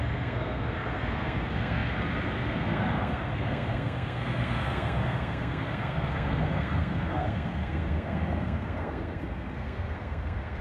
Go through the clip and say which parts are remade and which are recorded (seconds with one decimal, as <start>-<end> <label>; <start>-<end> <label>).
0.0-10.6 remade